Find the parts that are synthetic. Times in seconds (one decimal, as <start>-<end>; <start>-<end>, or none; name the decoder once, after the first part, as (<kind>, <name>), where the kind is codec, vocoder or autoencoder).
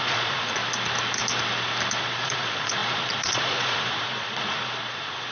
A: 0.0-0.6 (vocoder, Vocos); 2.0-5.3